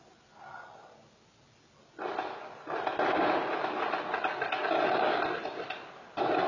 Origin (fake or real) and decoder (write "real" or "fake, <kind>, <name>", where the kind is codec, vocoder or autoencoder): real